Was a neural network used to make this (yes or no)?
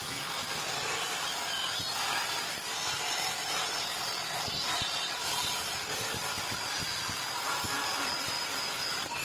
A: yes